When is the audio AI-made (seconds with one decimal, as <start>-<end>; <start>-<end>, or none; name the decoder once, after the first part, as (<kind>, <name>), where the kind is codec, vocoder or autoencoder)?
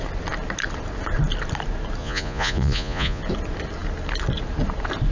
2.0-3.2 (vocoder, Vocos)